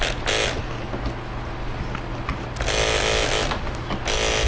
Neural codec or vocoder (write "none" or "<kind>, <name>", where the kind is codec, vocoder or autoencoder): none